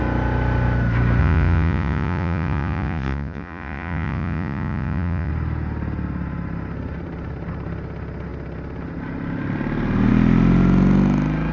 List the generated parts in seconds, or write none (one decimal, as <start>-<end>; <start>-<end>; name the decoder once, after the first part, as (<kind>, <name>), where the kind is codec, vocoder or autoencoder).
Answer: 1.2-5.3 (vocoder, Vocos)